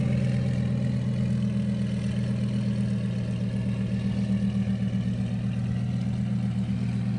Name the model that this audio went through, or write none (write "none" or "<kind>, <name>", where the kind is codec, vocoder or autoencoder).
none